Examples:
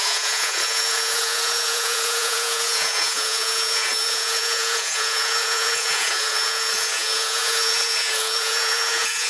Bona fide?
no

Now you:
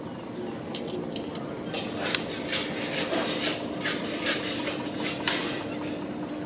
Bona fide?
yes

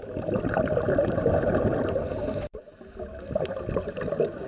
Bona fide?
yes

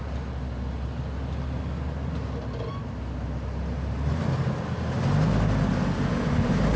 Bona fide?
yes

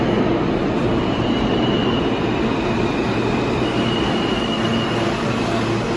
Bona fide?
yes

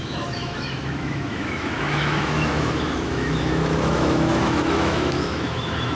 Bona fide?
no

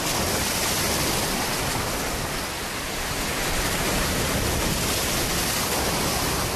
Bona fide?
yes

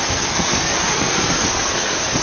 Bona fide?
no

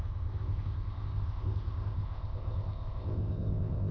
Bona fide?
no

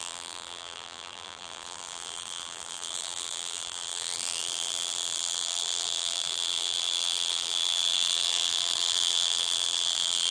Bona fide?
no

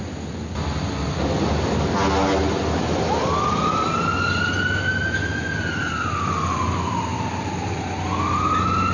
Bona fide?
yes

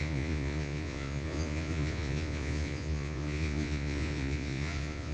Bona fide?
no